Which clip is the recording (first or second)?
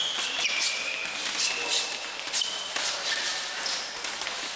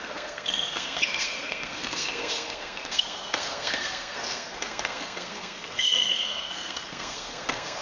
first